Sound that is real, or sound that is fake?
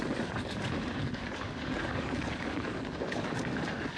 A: fake